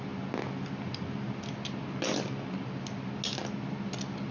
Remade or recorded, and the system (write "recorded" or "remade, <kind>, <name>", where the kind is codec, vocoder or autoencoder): recorded